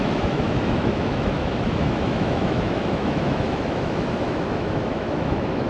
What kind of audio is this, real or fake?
fake